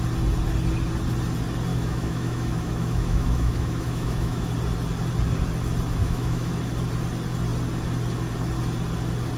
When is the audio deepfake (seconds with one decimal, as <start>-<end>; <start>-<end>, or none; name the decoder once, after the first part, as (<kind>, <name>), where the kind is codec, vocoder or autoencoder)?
1.7-4.5 (autoencoder, DAC-VAE); 6.0-6.5